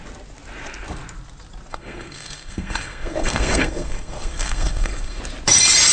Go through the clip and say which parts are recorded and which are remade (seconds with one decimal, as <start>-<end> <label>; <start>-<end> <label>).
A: 0.0-1.7 recorded; 1.7-5.2 remade; 5.2-5.9 recorded